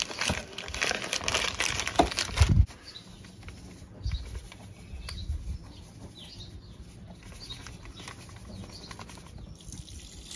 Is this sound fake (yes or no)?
no